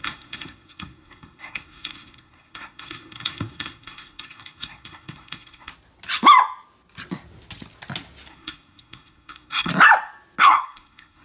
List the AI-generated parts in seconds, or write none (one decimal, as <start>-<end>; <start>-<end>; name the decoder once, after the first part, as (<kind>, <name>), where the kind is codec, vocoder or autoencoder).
0.0-5.7 (codec, SNAC); 8.3-9.7; 10.4-11.2